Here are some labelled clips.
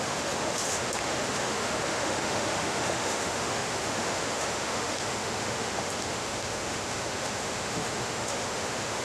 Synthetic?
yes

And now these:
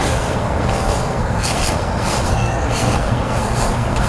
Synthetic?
yes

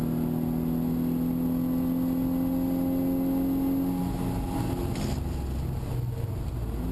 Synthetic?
no